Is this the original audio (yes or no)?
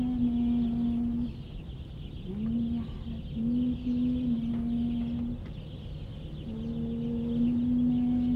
yes